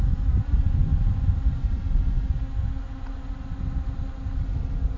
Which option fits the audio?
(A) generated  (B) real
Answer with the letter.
B